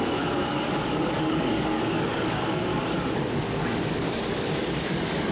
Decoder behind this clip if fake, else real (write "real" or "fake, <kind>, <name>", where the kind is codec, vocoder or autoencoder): fake, codec, DAC